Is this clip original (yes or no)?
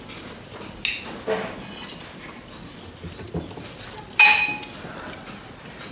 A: yes